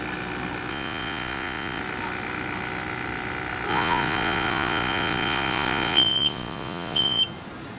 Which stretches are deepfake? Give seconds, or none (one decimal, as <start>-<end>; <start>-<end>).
0.7-1.8; 3.7-7.2